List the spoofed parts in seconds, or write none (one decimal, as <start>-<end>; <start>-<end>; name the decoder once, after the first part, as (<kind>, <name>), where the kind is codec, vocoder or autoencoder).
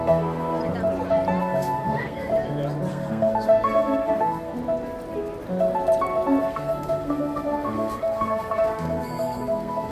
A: 0.0-0.6 (codec, SNAC); 1.4-2.3; 2.9-4.5; 6.4-9.9